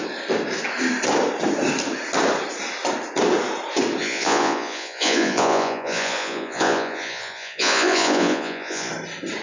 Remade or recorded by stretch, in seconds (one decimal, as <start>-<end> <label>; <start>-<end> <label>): 0.0-4.0 recorded; 4.0-8.9 remade; 8.9-9.4 recorded